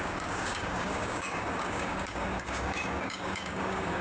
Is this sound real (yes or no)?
no